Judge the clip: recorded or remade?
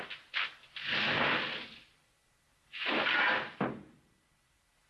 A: recorded